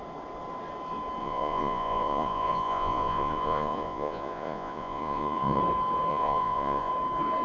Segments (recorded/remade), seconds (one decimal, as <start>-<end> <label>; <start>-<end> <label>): 0.0-1.2 recorded; 1.2-5.6 remade; 5.6-6.1 recorded; 6.1-6.9 remade; 6.9-7.4 recorded